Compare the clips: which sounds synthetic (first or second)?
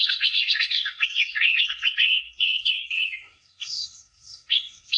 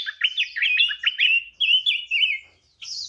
first